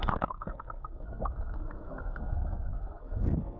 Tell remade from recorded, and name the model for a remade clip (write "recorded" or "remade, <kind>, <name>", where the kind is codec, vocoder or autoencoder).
remade, codec, SNAC